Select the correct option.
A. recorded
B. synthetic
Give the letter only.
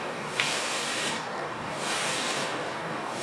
B